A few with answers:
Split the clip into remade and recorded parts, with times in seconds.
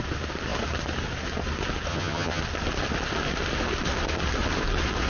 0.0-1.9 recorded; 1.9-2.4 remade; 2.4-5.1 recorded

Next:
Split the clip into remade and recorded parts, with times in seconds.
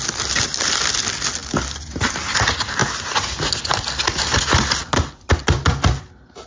0.0-6.5 recorded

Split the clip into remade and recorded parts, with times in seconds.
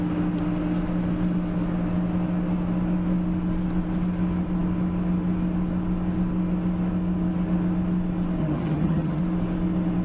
0.0-8.4 recorded; 8.4-9.2 remade; 9.2-10.0 recorded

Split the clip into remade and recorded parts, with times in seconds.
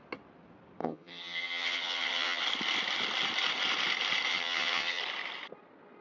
0.0-0.8 recorded; 0.8-2.4 remade; 2.4-4.3 recorded; 4.3-5.0 remade; 5.0-6.0 recorded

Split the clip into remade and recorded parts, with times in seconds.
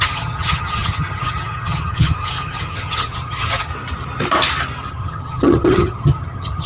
0.0-3.7 remade; 3.7-4.9 recorded; 4.9-6.7 remade